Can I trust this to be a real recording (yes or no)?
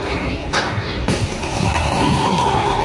no